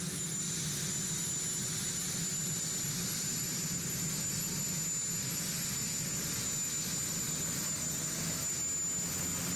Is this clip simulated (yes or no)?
no